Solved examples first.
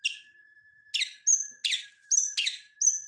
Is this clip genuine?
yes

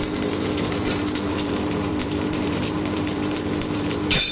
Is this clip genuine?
no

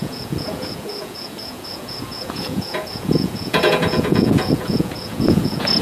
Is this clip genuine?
no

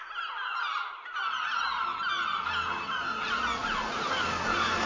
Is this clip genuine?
yes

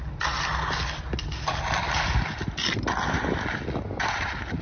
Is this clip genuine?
yes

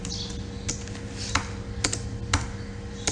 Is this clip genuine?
yes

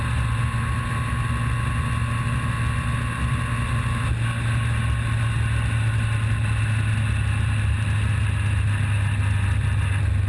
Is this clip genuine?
yes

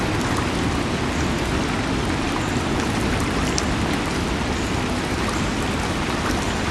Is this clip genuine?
yes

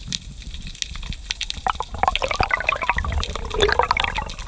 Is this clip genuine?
yes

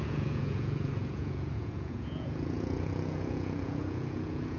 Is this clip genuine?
no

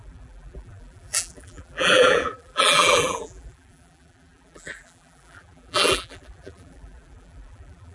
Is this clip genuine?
no